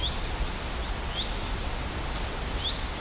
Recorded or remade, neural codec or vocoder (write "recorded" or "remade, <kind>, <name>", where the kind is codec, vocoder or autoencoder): recorded